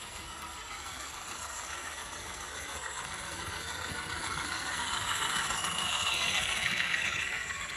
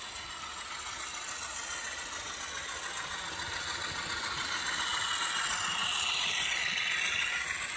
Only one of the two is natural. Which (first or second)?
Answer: second